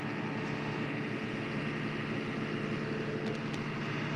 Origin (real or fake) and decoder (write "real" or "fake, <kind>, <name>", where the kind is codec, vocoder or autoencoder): real